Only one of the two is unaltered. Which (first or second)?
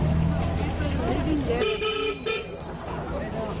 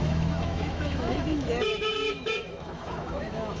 first